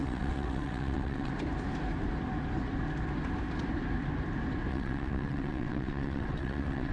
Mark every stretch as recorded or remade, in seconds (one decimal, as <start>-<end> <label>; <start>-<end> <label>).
0.0-1.3 remade; 1.3-4.7 recorded; 4.7-6.9 remade